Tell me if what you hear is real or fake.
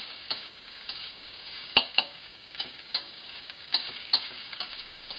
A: fake